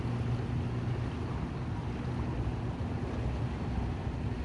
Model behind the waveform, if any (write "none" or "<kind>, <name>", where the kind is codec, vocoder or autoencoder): none